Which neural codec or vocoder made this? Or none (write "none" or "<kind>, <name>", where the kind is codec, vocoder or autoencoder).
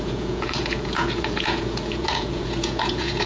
vocoder, Vocos